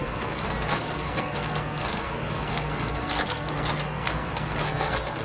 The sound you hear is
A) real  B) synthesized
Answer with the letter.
B